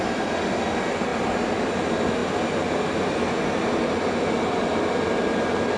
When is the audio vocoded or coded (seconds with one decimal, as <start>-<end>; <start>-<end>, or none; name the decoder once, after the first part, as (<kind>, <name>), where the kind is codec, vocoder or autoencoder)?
none